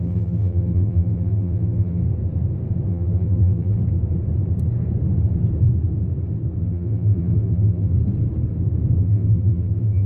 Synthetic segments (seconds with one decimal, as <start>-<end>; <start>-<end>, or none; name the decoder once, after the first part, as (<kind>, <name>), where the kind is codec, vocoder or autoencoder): 0.0-2.0 (vocoder, BigVGAN v2); 2.9-3.8; 6.6-7.9; 9.0-10.1